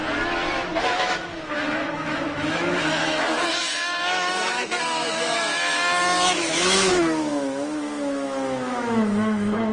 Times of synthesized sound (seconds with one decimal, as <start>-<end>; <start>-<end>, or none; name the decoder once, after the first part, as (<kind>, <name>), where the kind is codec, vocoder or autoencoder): 0.8-9.7 (autoencoder, DAC-VAE)